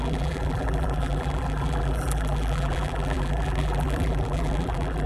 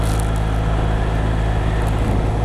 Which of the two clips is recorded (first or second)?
second